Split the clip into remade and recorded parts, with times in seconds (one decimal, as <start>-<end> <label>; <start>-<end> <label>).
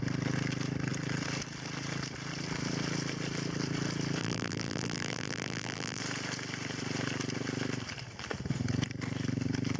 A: 0.0-4.2 recorded; 4.2-6.0 remade; 6.0-9.8 recorded